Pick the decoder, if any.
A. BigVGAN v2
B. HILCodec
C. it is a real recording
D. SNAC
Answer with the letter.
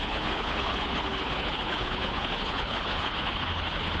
B